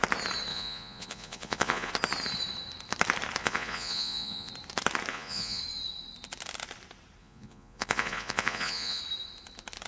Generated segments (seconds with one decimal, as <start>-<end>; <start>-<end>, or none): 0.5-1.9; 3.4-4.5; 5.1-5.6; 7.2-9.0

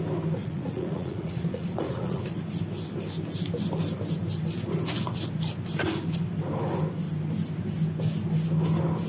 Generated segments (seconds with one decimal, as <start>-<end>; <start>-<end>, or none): 0.4-2.2

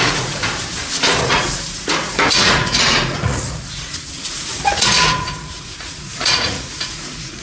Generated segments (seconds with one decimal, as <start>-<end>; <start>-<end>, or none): 0.0-0.4; 1.2-7.4

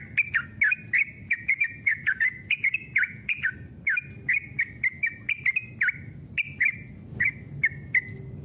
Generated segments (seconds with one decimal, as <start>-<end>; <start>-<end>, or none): 1.2-3.5

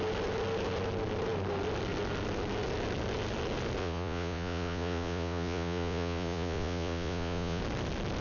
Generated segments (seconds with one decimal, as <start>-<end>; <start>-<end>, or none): 3.8-7.6

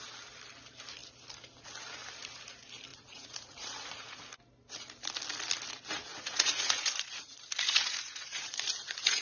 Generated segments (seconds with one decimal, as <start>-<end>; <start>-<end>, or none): 2.9-4.2; 6.1-9.2

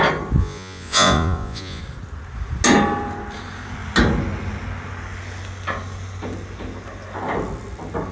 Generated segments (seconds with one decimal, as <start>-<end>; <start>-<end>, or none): 0.4-1.8